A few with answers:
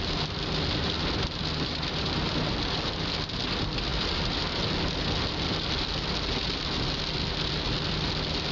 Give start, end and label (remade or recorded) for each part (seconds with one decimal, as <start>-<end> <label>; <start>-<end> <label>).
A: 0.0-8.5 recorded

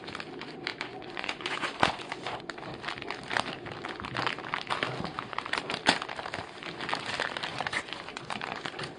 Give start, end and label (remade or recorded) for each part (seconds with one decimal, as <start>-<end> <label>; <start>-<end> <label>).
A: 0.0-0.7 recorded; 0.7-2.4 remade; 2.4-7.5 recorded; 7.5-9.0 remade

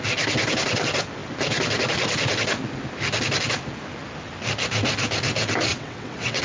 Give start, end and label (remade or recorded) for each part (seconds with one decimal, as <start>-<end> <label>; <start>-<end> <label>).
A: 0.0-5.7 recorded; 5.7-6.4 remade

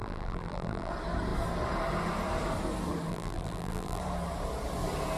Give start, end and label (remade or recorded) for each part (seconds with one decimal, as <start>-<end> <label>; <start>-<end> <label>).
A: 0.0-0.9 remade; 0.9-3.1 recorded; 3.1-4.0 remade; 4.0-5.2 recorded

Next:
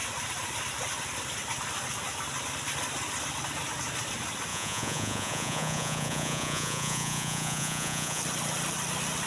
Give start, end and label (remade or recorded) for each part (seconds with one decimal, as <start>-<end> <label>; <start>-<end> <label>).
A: 0.0-4.5 recorded; 4.5-8.2 remade; 8.2-9.3 recorded

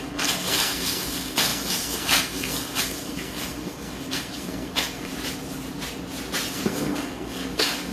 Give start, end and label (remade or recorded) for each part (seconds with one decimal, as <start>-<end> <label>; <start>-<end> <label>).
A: 0.0-5.1 remade; 5.1-6.5 recorded; 6.5-7.9 remade